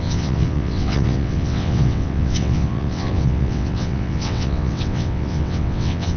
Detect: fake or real fake